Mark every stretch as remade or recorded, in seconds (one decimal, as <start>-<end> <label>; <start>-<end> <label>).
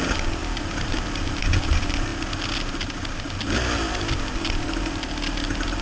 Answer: 0.0-5.8 recorded